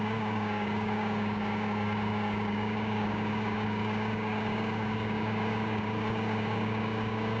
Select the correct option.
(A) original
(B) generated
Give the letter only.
B